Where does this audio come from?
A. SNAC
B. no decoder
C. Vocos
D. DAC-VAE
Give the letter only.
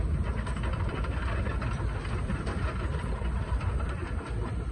B